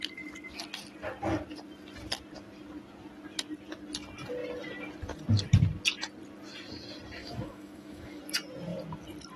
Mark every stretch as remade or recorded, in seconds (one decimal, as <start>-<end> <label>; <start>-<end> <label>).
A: 0.0-7.2 recorded; 7.2-8.2 remade; 8.2-9.4 recorded